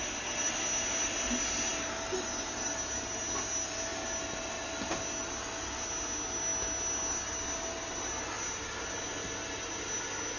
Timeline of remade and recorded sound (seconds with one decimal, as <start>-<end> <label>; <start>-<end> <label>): 0.0-10.4 recorded

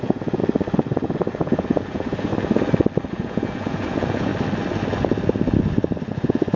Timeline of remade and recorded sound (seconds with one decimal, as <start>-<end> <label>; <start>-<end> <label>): 0.0-0.4 remade; 0.4-1.3 recorded; 1.3-2.3 remade; 2.3-3.1 recorded; 3.1-4.3 remade; 4.3-6.1 recorded; 6.1-6.6 remade

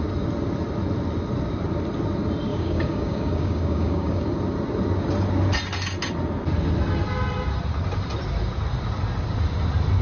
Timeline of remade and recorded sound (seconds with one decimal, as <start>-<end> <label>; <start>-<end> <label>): 0.0-2.5 recorded; 2.5-4.2 remade; 4.2-10.0 recorded

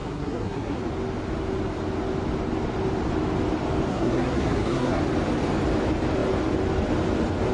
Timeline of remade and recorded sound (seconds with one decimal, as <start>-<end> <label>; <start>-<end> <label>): 0.0-0.8 remade; 0.8-3.9 recorded; 3.9-5.0 remade; 5.0-7.5 recorded